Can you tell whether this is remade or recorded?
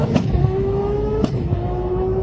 remade